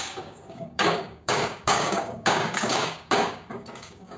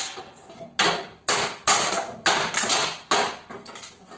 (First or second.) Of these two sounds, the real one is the second